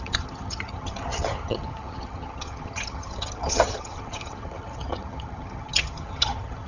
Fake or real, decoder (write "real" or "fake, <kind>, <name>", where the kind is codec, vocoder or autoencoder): fake, vocoder, HiFi-GAN